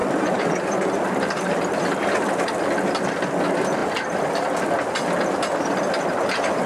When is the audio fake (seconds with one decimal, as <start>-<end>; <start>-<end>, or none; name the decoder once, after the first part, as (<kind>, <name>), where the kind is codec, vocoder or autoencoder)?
0.0-1.9 (vocoder, BigVGAN v2)